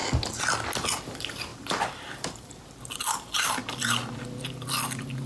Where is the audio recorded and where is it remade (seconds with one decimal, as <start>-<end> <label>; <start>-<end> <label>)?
0.0-1.0 recorded; 1.0-5.3 remade